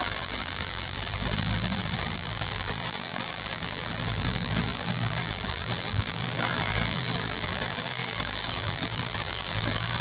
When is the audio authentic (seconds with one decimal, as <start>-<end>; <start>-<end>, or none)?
none